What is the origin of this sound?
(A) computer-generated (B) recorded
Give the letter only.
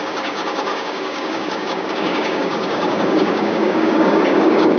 A